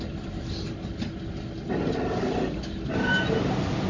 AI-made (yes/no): no